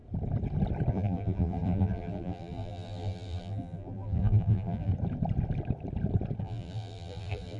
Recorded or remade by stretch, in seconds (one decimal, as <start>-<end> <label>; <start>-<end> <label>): 0.0-0.9 recorded; 0.9-4.9 remade; 4.9-6.4 recorded; 6.4-7.6 remade